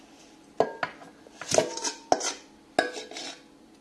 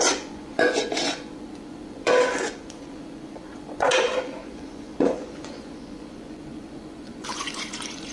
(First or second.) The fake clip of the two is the second